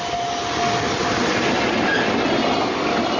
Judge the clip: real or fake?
real